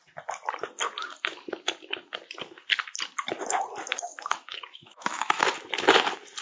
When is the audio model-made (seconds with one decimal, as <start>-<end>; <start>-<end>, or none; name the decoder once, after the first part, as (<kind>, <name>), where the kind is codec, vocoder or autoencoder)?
4.1-5.4 (autoencoder, DAC-VAE)